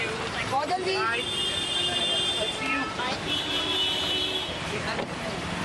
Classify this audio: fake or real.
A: fake